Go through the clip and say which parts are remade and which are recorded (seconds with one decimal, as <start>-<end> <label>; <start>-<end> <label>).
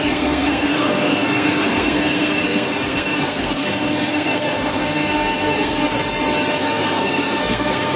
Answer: 0.0-5.9 remade; 5.9-6.5 recorded; 6.5-8.0 remade